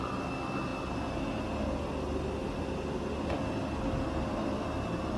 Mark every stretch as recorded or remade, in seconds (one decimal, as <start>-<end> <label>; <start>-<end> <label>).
0.0-5.2 recorded